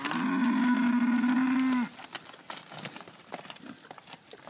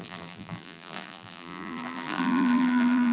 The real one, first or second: first